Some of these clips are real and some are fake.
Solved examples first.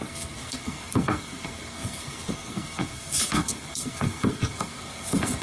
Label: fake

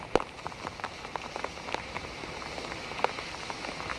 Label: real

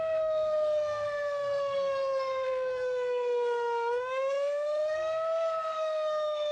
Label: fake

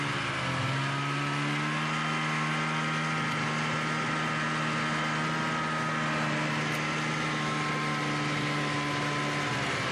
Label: real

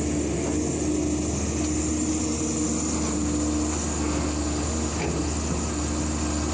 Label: real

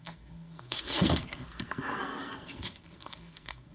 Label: fake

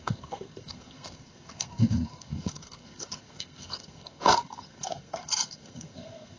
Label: fake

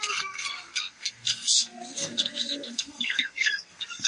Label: fake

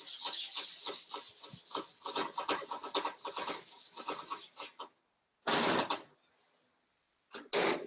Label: real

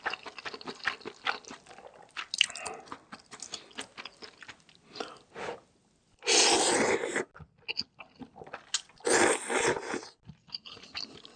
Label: real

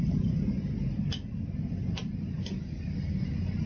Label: real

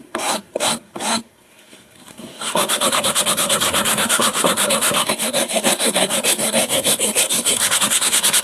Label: fake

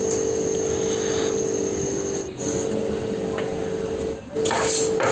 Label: real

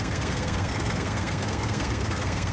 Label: fake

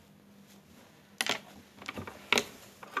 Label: real